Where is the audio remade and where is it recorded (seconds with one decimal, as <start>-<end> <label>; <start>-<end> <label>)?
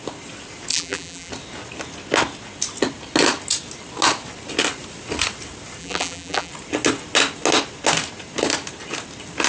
0.0-0.7 recorded; 0.7-1.3 remade; 1.3-5.8 recorded; 5.8-6.5 remade; 6.5-9.5 recorded